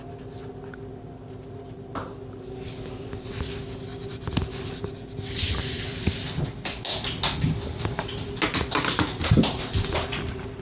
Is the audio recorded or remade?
recorded